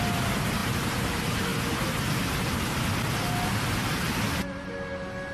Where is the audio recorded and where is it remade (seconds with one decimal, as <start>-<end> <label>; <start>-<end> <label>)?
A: 0.0-5.3 recorded